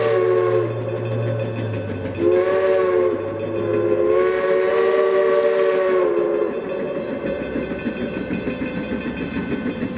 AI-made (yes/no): no